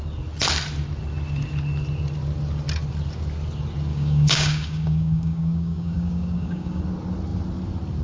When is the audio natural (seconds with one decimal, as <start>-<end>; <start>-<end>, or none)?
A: 0.0-3.9; 6.8-8.0